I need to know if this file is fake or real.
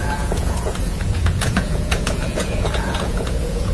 fake